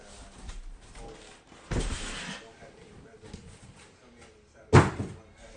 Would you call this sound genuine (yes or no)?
yes